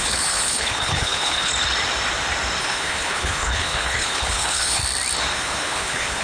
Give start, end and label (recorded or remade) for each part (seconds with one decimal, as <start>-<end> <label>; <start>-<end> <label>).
0.0-1.5 remade; 1.5-2.6 recorded; 2.6-4.8 remade; 4.8-5.3 recorded; 5.3-6.2 remade